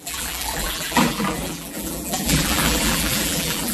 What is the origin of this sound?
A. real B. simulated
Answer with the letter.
B